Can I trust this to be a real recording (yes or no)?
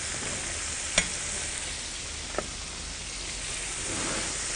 yes